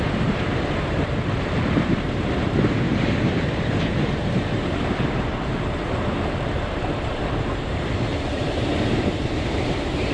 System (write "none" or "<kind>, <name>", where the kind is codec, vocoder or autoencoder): vocoder, BigVGAN v2